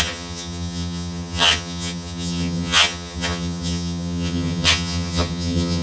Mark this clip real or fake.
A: fake